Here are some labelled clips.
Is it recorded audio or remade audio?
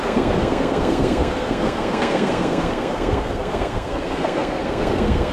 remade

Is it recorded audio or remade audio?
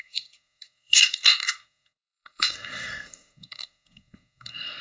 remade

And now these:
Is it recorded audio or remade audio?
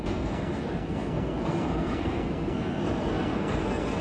remade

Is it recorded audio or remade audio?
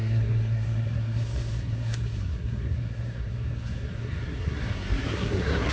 remade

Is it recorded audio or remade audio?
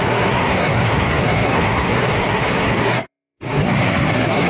remade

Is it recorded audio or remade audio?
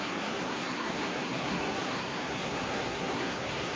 remade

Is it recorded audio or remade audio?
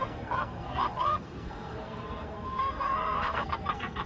remade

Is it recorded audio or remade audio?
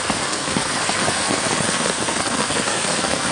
remade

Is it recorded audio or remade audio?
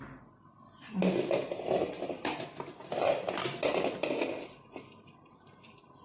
recorded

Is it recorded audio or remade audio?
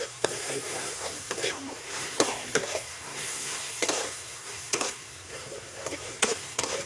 remade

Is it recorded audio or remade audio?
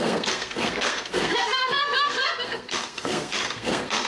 remade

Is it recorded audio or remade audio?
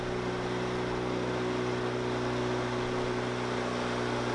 recorded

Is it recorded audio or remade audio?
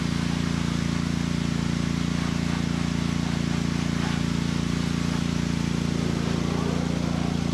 recorded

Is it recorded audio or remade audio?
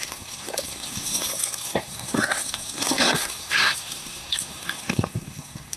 remade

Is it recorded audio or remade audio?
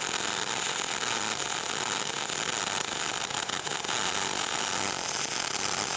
recorded